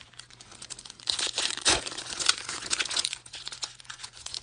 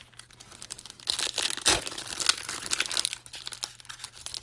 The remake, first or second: first